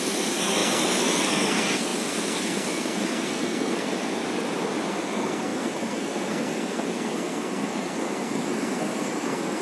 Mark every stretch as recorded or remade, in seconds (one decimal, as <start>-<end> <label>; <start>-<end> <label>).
0.0-4.2 remade; 4.2-4.9 recorded; 4.9-9.6 remade